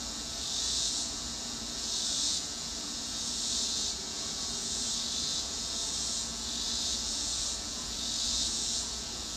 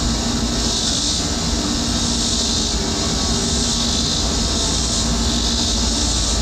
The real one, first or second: second